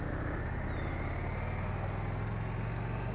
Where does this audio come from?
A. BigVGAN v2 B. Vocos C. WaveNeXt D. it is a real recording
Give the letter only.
D